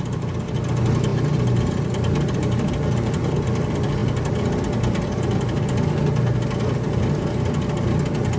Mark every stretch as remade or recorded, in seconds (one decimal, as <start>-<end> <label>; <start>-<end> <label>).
0.0-8.4 recorded